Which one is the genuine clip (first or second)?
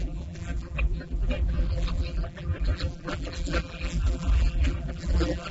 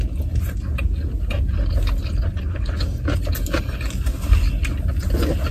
second